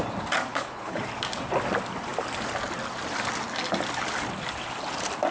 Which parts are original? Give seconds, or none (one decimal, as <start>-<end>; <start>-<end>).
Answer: 0.0-0.5; 1.0-5.3